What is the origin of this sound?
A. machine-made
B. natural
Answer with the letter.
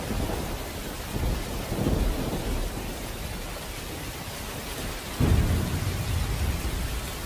B